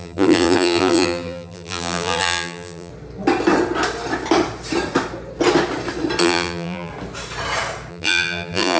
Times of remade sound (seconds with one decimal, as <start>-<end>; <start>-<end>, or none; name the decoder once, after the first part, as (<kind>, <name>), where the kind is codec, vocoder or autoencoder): 0.0-2.9 (vocoder, BigVGAN v2); 6.2-6.9; 7.9-8.8